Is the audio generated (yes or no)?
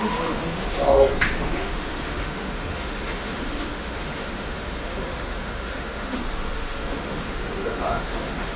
yes